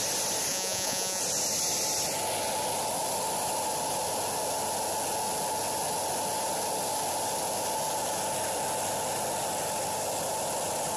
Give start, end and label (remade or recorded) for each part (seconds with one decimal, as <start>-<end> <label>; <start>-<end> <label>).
0.0-0.5 recorded; 0.5-1.2 remade; 1.2-11.0 recorded